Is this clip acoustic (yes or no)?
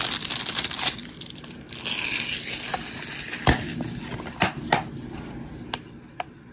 yes